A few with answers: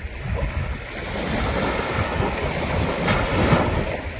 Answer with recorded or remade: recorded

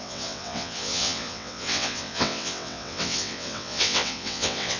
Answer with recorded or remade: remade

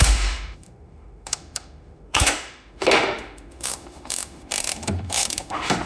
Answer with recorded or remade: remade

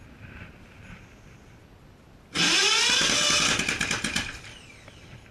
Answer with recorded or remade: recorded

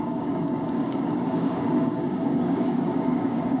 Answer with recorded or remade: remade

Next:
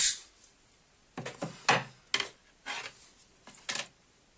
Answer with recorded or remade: recorded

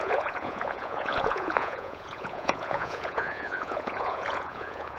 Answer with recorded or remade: remade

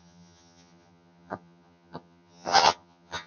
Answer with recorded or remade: remade